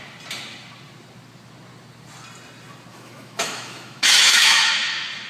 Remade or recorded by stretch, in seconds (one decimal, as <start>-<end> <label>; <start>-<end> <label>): 0.0-2.9 recorded; 2.9-4.7 remade; 4.7-5.3 recorded